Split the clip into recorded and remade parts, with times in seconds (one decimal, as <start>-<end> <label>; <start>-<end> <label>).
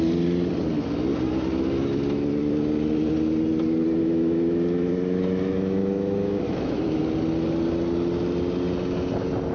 0.0-4.0 recorded; 4.0-7.0 remade; 7.0-9.5 recorded